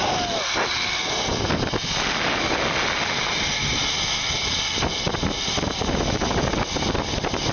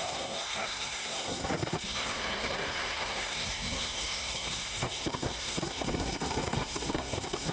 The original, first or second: first